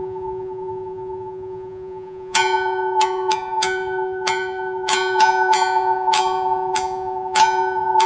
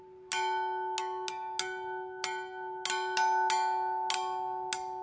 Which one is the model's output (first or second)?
first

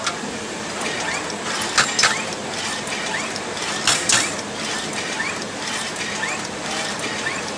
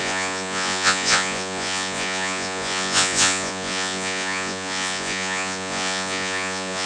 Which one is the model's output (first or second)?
second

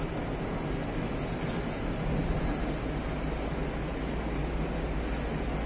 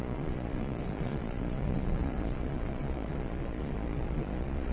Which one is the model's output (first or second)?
second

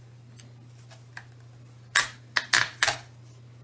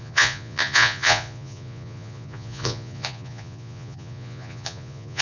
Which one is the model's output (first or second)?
second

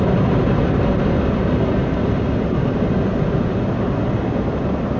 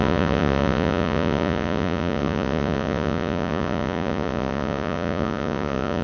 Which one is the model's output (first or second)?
second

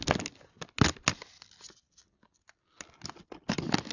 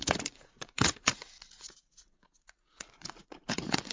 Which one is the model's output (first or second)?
second